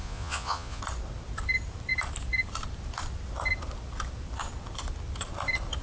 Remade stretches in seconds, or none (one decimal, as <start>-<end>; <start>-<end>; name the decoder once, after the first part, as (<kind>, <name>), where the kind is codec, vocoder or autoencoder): 0.0-0.8 (vocoder, Vocos)